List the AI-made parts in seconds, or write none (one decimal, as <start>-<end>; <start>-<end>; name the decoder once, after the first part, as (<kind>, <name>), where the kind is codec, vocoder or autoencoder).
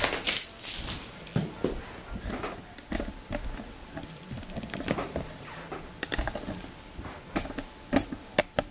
none